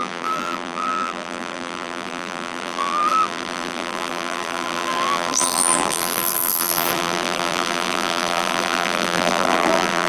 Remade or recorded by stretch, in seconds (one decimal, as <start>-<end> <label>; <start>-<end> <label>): 0.0-10.1 remade